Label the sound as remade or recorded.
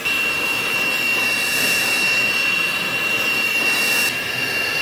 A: recorded